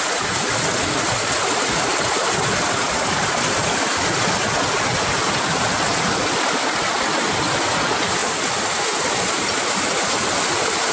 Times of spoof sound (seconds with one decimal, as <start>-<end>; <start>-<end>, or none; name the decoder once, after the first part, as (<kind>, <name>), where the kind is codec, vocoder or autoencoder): none

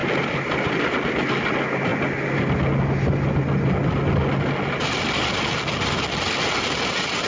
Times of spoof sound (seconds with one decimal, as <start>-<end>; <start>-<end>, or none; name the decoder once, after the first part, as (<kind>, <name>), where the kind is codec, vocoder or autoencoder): 0.0-0.9 (vocoder, BigVGAN v2)